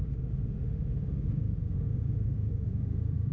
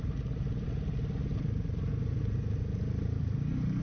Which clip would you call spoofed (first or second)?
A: first